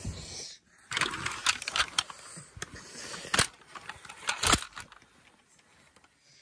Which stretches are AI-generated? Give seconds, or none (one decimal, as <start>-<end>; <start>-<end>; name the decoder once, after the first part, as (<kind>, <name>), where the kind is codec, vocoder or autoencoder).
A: none